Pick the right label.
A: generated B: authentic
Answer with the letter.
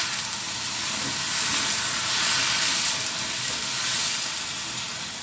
B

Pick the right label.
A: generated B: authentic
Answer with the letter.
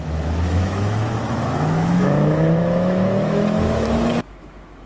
A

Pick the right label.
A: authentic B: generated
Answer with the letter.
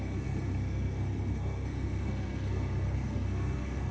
B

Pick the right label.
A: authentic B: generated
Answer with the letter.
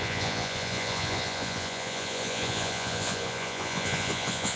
B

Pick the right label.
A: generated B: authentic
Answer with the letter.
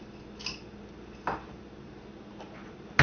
B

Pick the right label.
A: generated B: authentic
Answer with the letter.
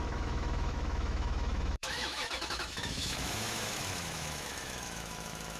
A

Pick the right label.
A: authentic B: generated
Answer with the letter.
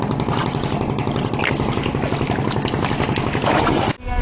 A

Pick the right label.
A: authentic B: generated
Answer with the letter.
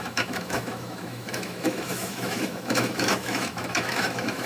B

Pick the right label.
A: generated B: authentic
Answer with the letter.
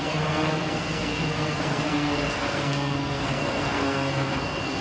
A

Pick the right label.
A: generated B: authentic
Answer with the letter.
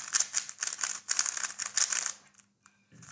B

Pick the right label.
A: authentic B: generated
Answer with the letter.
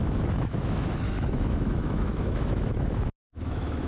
B